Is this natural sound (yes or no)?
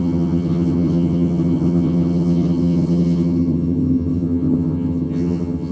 no